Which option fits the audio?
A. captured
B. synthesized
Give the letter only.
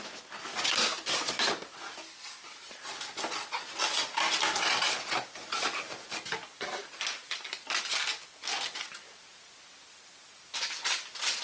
A